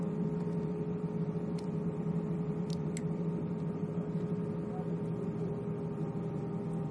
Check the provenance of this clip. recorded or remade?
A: recorded